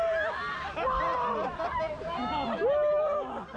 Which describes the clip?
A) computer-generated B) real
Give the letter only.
B